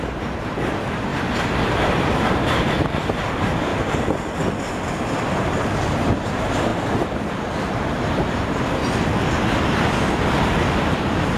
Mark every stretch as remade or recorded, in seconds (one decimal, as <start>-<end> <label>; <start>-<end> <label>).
0.0-3.7 remade; 3.7-4.9 recorded; 4.9-8.8 remade; 8.8-11.4 recorded